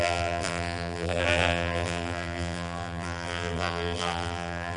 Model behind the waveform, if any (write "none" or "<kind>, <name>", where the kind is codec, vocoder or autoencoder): vocoder, BigVGAN v2